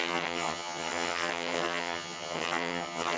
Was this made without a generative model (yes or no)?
no